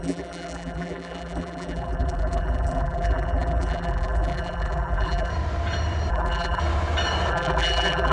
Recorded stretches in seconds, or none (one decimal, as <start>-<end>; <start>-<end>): 5.3-6.1; 6.6-7.3